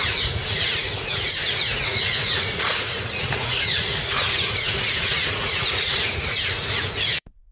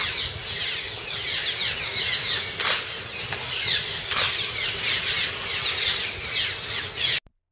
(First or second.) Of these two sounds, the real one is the second